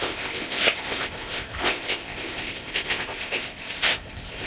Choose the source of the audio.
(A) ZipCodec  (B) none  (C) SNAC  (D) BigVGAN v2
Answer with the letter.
A